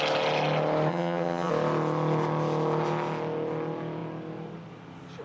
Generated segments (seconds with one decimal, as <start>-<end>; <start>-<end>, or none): 0.9-1.5